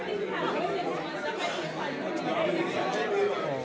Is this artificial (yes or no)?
no